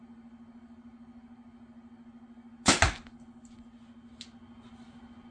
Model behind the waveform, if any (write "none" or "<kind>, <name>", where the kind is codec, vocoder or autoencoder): none